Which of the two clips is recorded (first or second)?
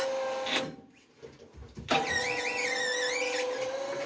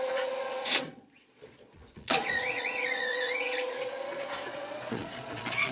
first